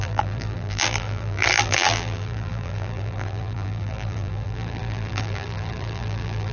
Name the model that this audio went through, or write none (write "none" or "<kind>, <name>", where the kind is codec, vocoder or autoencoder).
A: vocoder, BigVGAN v2